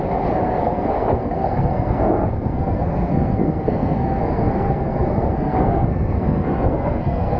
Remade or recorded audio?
remade